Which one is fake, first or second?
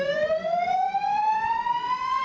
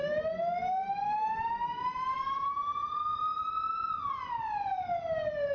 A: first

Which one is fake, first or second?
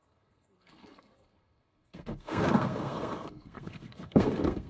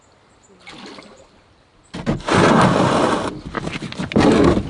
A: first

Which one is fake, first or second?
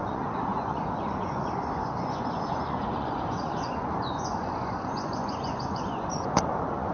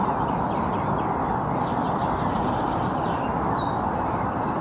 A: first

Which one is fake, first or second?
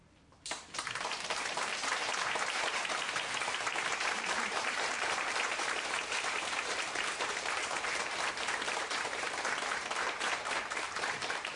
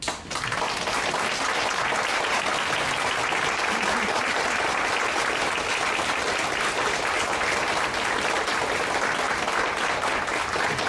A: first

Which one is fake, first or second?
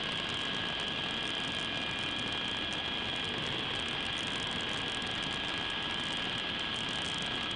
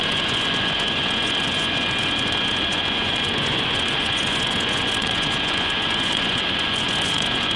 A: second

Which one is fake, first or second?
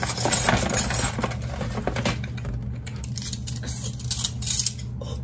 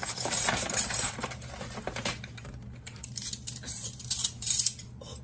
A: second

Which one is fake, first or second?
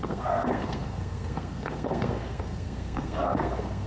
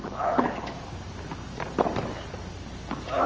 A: first